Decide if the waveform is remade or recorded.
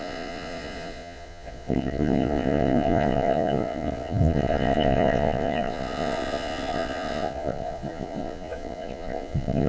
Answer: remade